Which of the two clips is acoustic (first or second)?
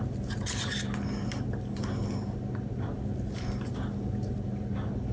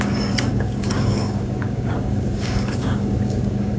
first